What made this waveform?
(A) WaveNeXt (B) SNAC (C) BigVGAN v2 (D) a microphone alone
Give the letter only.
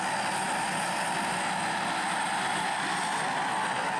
D